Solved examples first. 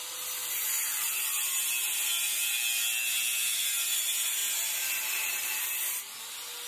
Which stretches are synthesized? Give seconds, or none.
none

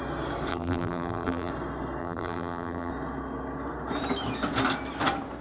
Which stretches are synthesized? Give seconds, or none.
0.5-1.5 (vocoder, BigVGAN v2); 2.0-2.9

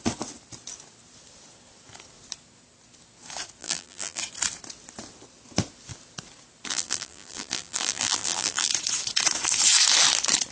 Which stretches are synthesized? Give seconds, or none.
3.6-4.2 (vocoder, BigVGAN v2); 6.7-8.7